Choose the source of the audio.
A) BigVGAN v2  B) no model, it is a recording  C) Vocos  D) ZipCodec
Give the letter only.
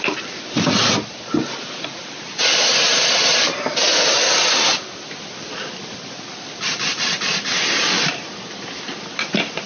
B